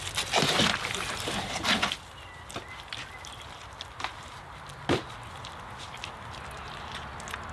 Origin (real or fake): real